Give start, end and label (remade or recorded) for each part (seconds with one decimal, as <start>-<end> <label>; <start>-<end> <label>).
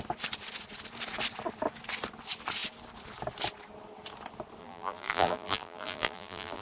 0.0-4.6 recorded; 4.6-6.6 remade